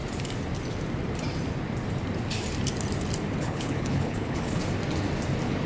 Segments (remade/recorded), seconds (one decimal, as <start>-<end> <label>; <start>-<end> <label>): 0.0-3.4 recorded; 3.4-4.6 remade; 4.6-5.7 recorded